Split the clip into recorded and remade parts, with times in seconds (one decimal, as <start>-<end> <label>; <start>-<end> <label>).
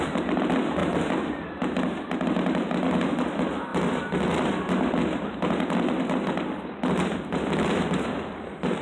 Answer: 0.0-8.8 recorded